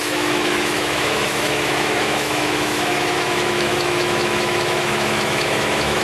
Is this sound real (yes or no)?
no